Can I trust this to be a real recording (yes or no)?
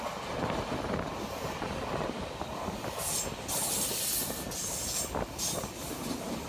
yes